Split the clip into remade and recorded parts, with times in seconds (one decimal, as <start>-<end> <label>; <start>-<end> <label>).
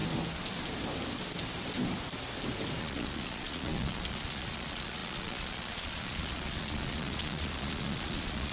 0.0-2.8 recorded; 2.8-8.5 remade